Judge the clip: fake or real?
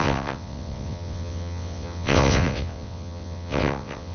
fake